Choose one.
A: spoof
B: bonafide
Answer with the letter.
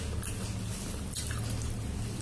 B